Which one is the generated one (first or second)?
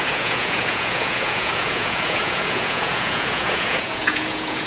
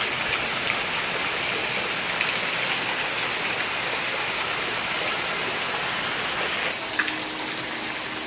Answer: first